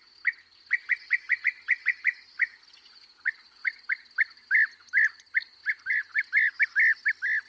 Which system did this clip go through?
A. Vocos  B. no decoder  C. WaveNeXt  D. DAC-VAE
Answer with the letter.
B